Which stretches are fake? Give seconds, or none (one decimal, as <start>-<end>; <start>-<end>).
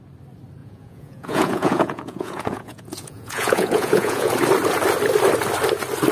0.6-4.3